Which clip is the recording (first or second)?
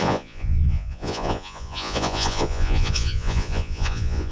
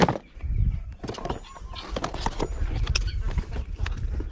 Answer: second